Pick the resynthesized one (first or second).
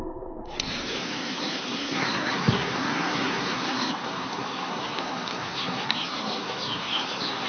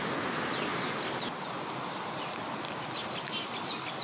first